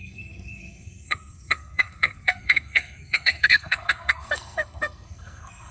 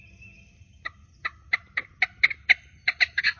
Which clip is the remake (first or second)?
first